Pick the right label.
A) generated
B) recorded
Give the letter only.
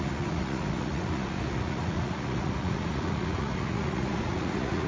A